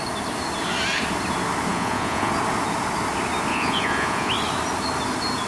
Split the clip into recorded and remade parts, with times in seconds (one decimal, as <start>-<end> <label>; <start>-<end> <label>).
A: 0.0-1.7 recorded; 1.7-2.3 remade; 2.3-3.5 recorded; 3.5-4.3 remade; 4.3-5.5 recorded